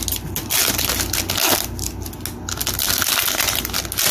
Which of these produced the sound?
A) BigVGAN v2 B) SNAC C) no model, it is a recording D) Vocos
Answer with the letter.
C